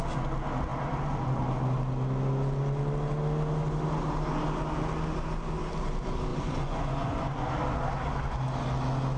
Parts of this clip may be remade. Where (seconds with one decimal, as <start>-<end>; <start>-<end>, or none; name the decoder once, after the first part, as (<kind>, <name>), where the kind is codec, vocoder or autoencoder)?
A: 6.3-7.5 (vocoder, Vocos)